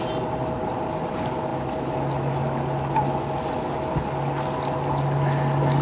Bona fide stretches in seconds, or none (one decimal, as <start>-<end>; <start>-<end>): 0.0-5.8